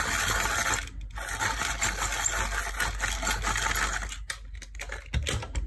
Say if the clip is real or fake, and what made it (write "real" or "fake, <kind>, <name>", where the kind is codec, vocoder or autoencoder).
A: real